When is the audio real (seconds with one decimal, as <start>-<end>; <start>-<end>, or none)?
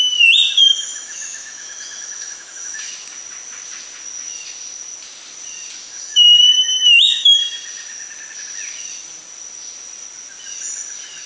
0.0-0.6; 2.9-5.8; 7.4-11.3